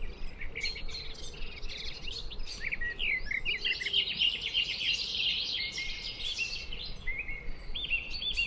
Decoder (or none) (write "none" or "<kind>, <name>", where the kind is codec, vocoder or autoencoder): none